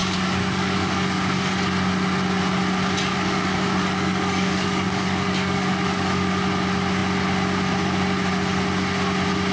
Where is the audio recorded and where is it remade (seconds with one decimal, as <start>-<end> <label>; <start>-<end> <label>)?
0.0-1.5 remade; 1.5-3.1 recorded; 3.1-6.3 remade; 6.3-9.5 recorded